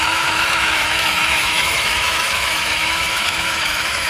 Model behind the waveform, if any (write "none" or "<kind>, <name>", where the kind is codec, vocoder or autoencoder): autoencoder, DAC-VAE